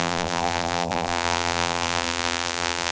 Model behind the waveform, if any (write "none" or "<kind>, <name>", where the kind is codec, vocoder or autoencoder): vocoder, BigVGAN v2